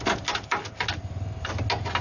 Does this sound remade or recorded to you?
recorded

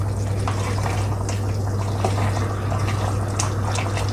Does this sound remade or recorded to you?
recorded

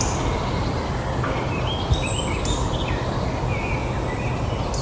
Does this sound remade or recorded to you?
recorded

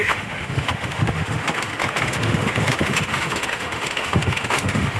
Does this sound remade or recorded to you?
remade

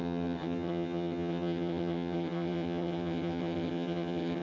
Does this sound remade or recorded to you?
remade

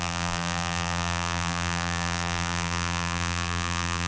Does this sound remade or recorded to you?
remade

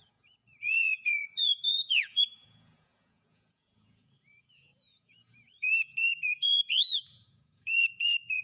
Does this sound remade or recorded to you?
remade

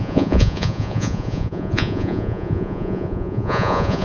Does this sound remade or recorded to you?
remade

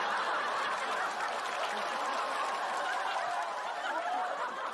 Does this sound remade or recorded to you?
recorded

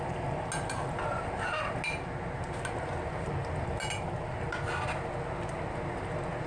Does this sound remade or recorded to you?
recorded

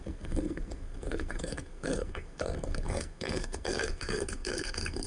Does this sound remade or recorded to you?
remade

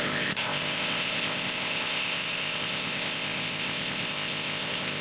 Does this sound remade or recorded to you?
remade